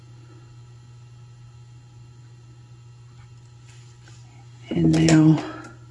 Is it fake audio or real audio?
real